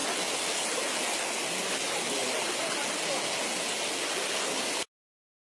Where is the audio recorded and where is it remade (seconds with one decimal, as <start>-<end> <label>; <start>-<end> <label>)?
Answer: 0.0-5.5 recorded